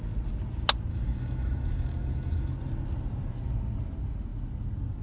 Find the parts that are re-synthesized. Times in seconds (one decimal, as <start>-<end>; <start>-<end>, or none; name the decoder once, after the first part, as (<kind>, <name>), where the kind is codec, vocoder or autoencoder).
0.9-2.5 (autoencoder, DAC-VAE)